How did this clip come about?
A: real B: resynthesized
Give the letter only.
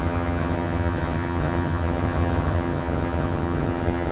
B